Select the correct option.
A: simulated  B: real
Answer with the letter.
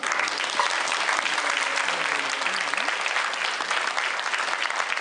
B